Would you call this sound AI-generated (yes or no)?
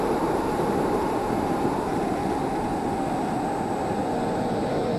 no